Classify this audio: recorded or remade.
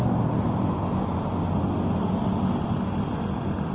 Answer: recorded